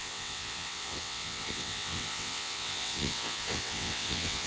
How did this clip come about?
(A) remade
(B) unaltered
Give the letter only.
A